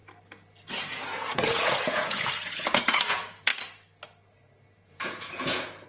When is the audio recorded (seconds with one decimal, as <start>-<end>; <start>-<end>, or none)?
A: 0.0-1.0; 3.5-4.9